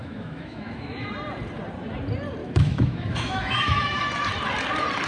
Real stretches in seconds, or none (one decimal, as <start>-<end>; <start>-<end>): 1.1-2.4; 4.0-5.1